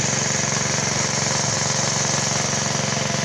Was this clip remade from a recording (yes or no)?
no